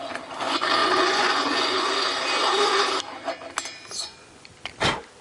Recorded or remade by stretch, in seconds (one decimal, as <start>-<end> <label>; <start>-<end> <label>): 0.0-0.8 recorded; 0.8-1.9 remade; 1.9-4.0 recorded; 4.0-4.5 remade; 4.5-5.2 recorded

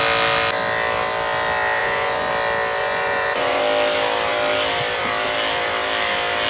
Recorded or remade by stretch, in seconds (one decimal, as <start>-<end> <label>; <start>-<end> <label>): 0.0-1.8 recorded; 1.8-2.3 remade; 2.3-2.8 recorded; 2.8-3.6 remade; 3.6-6.5 recorded